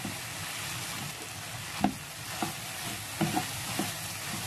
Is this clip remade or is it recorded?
recorded